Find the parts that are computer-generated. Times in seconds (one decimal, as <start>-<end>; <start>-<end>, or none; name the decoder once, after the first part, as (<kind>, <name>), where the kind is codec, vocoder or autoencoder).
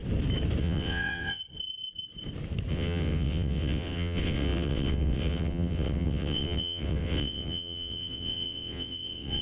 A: 0.6-1.4 (vocoder, WaveNeXt); 2.7-9.4